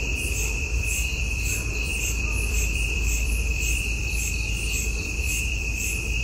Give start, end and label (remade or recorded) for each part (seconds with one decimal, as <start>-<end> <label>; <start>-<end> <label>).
0.0-6.2 remade